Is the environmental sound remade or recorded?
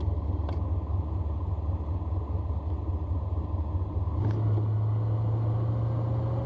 recorded